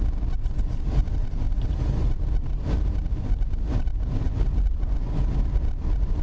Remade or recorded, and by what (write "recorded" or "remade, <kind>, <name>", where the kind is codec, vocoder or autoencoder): recorded